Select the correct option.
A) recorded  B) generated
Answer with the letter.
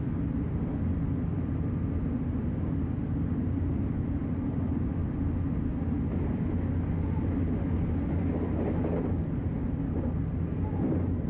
A